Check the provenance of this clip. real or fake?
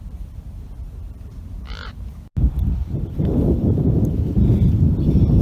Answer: fake